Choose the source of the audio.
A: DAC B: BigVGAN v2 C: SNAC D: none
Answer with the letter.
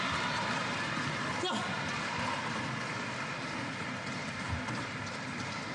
D